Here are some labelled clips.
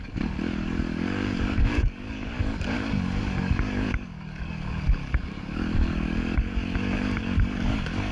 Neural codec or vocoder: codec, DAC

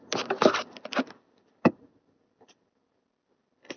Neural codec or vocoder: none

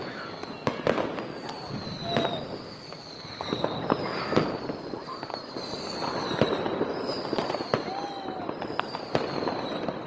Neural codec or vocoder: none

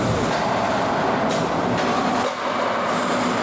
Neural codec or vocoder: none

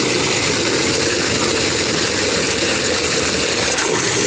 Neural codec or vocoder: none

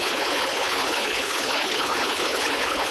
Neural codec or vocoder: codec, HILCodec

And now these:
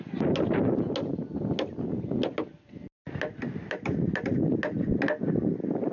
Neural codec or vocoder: none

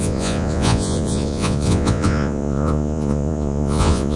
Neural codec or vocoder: vocoder, Vocos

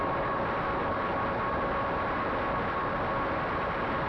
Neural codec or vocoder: none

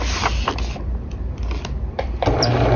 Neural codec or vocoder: vocoder, BigVGAN v2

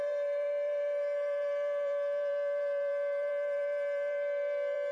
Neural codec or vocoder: vocoder, BigVGAN v2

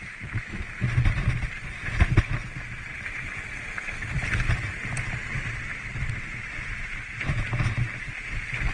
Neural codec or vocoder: none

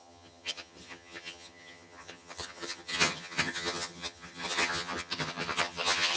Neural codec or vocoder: vocoder, HiFi-GAN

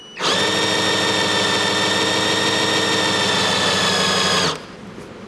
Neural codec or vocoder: none